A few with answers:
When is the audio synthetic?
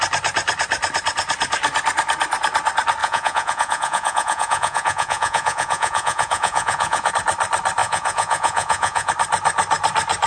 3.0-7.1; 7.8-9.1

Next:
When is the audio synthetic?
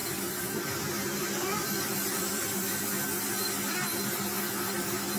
0.0-2.8